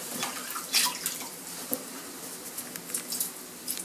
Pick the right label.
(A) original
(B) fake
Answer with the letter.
A